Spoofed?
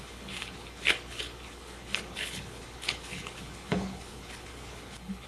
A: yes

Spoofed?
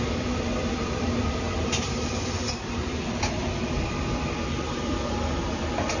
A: yes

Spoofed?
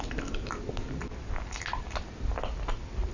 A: no